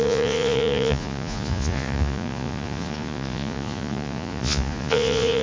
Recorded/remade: remade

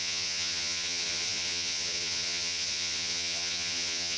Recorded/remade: remade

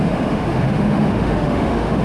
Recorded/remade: remade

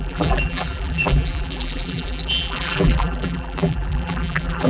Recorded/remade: remade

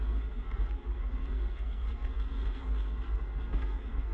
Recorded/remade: remade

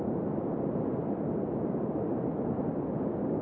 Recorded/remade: recorded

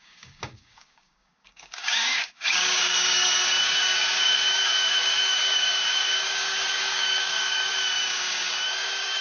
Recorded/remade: remade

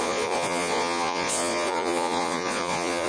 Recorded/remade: remade